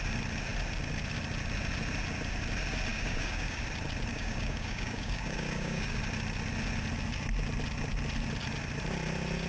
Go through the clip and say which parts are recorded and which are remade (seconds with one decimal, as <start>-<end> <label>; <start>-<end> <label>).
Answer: 0.0-2.9 recorded; 2.9-3.6 remade; 3.6-4.1 recorded; 4.1-6.0 remade; 6.0-9.5 recorded